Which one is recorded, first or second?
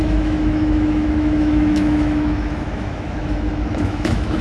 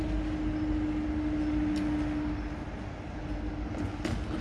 second